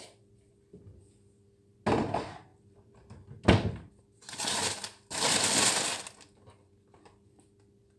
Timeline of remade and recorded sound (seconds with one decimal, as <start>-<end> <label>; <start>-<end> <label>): 0.0-8.0 recorded